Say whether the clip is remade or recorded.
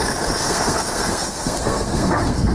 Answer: remade